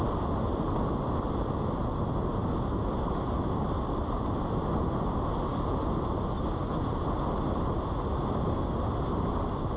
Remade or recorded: recorded